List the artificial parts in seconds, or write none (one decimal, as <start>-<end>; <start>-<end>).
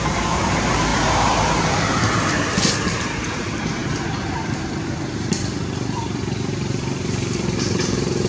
0.0-8.3